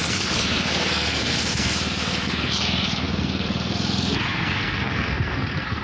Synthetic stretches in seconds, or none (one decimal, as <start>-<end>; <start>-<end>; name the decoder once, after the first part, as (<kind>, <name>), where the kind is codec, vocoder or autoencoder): 0.0-5.8 (codec, SNAC)